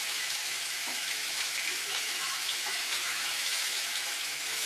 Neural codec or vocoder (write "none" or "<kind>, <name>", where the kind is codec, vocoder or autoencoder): autoencoder, DAC-VAE